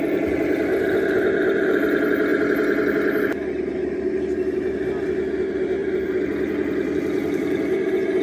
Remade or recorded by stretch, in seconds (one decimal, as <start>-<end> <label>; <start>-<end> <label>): 0.0-5.8 recorded; 5.8-7.6 remade; 7.6-8.2 recorded